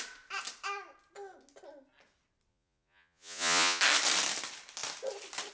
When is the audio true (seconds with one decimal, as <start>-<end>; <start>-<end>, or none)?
0.0-2.5; 3.8-5.5